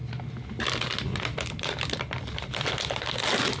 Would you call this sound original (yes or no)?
no